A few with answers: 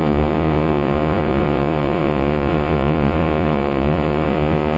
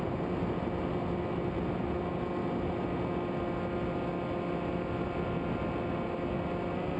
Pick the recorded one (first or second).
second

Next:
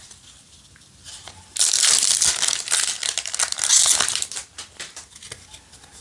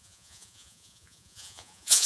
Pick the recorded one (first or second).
first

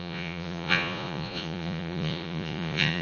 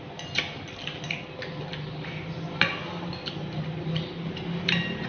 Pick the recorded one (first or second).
second